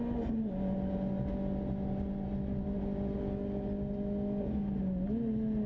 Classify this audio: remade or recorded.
recorded